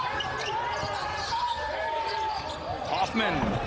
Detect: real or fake real